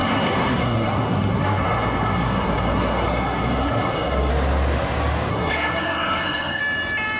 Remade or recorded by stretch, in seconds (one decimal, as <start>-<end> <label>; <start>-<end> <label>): 0.0-4.3 remade; 4.3-5.3 recorded; 5.3-6.6 remade; 6.6-7.2 recorded